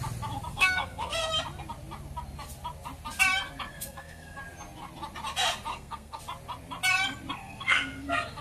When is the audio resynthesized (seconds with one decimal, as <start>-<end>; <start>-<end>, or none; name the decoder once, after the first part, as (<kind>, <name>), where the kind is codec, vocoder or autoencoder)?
0.5-1.3 (codec, SNAC); 3.7-4.4; 5.7-6.2; 7.4-8.4